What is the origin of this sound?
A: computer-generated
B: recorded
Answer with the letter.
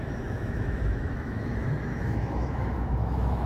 A